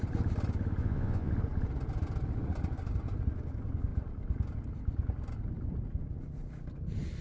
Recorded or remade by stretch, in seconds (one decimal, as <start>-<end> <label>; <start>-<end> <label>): 0.0-0.8 recorded; 0.8-1.3 remade; 1.3-7.2 recorded